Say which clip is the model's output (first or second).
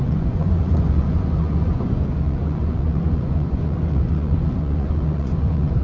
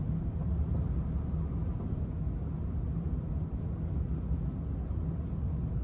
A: first